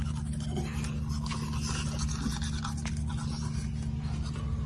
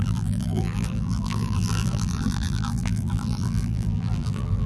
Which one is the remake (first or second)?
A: second